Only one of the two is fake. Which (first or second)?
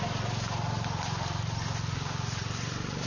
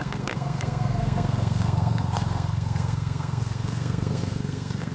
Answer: second